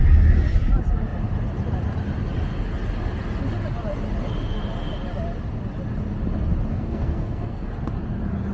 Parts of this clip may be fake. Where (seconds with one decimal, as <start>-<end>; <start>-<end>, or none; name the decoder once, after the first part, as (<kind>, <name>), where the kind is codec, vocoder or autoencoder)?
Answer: 6.7-7.7 (codec, SNAC)